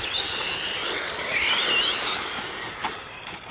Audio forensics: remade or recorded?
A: recorded